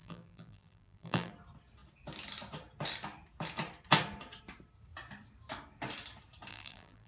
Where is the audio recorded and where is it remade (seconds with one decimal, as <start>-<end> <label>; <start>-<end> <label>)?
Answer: 0.0-1.3 remade; 1.3-6.5 recorded; 6.5-7.1 remade